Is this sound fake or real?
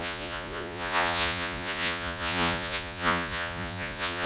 fake